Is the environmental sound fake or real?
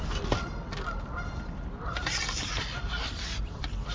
fake